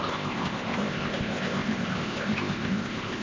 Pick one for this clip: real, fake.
fake